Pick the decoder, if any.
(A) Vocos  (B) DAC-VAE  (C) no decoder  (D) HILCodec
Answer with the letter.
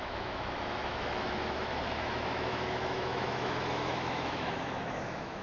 B